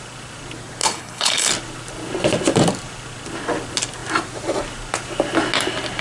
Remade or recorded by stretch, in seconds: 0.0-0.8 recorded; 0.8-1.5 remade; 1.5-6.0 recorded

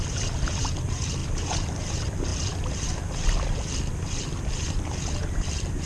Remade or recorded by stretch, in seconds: 0.0-5.9 recorded

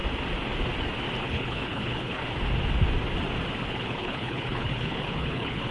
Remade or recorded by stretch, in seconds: 0.0-1.2 recorded; 1.2-2.2 remade; 2.2-3.7 recorded; 3.7-5.7 remade